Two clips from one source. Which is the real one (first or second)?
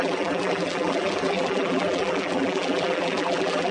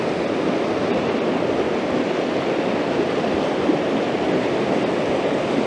second